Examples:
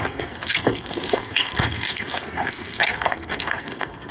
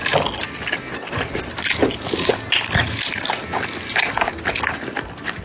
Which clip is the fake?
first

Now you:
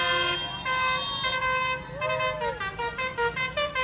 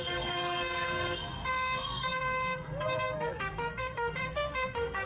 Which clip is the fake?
second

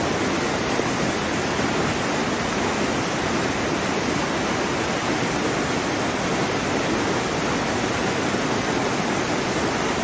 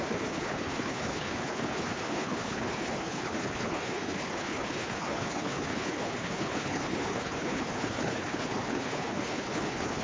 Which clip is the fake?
second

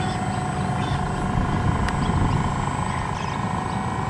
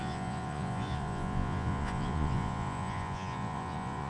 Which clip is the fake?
second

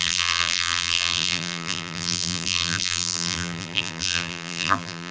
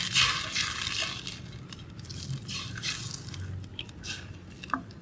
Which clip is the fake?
first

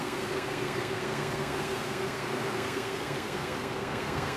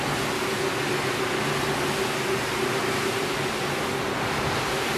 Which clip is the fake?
first